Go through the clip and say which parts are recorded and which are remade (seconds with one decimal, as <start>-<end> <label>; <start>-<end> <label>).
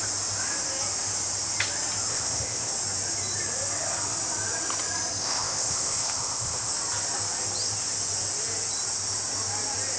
0.0-2.1 recorded; 2.1-2.7 remade; 2.7-5.2 recorded; 5.2-6.7 remade; 6.7-10.0 recorded